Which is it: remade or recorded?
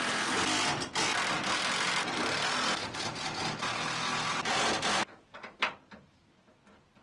recorded